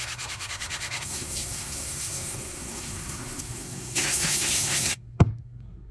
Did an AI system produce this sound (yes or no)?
yes